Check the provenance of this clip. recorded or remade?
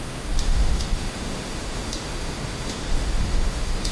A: remade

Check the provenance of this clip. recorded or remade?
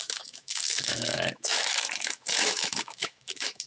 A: remade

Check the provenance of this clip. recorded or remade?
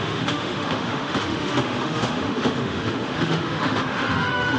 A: remade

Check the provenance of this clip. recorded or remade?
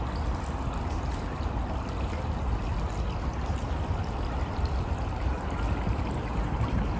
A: recorded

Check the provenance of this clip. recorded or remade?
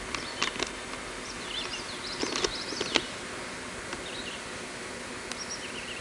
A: recorded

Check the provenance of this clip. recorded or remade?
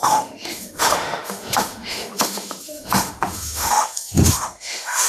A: remade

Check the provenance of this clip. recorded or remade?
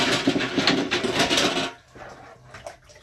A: recorded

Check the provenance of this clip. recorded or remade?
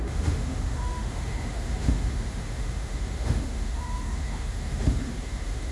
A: remade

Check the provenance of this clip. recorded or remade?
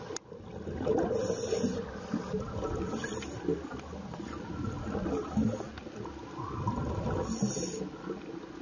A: recorded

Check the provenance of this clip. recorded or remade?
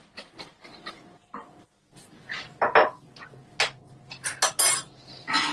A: recorded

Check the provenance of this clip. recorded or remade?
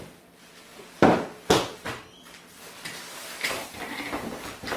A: recorded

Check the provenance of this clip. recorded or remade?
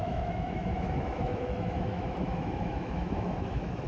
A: remade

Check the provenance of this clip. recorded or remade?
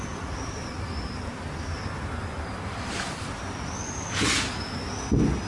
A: recorded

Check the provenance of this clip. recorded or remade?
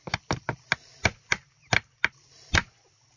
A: recorded